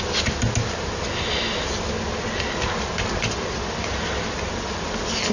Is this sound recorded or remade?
recorded